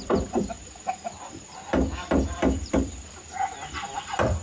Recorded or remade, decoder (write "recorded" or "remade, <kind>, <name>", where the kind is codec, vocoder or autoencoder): remade, vocoder, BigVGAN v2